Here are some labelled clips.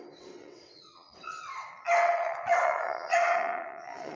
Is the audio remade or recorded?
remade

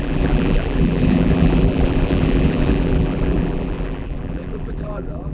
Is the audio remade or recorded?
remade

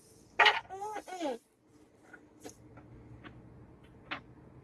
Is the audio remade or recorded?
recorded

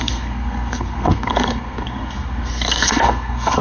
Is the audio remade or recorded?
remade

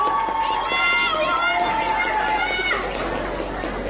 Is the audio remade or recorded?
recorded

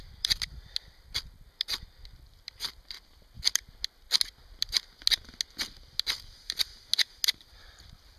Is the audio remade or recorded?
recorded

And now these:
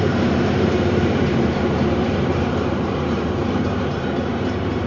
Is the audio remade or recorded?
remade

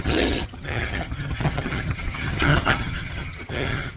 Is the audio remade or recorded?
remade